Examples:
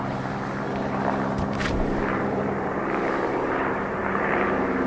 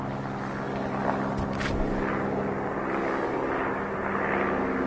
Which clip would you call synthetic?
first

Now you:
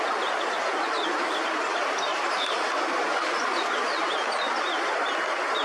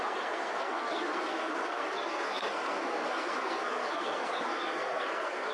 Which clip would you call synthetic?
second